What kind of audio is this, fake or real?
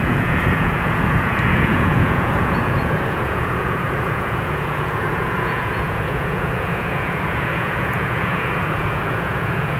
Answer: fake